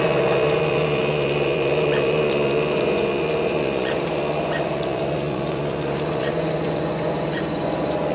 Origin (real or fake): fake